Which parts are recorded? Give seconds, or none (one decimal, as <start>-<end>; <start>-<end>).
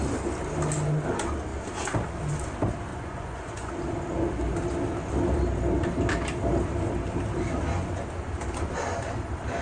0.0-2.9; 3.7-9.6